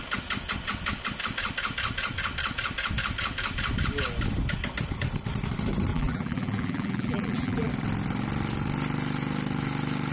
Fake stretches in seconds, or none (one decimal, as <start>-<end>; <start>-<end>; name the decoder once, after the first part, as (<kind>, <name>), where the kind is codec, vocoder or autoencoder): 5.9-7.7 (vocoder, BigVGAN v2)